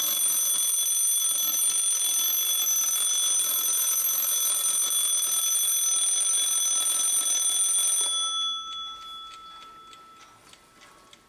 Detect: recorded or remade recorded